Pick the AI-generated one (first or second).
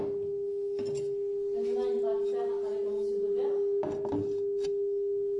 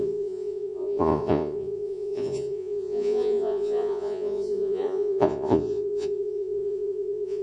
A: second